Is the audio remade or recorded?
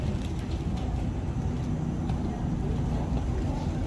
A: recorded